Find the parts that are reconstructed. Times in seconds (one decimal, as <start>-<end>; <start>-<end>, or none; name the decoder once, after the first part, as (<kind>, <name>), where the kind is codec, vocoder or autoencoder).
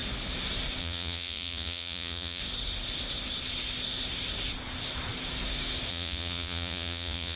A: 0.8-2.4 (vocoder, Vocos); 5.9-7.4